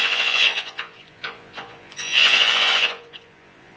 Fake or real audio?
fake